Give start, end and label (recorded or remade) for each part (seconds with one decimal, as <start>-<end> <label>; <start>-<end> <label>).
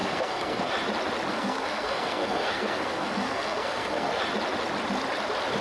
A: 0.0-0.7 remade; 0.7-1.3 recorded; 1.3-4.2 remade; 4.2-5.6 recorded